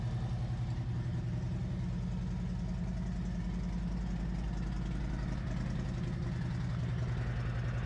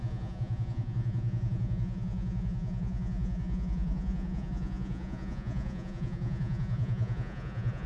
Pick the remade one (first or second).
second